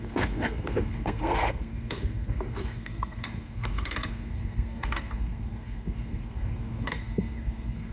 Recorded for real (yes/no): no